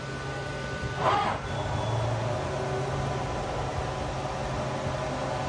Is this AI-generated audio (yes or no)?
no